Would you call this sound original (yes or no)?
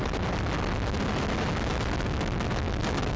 yes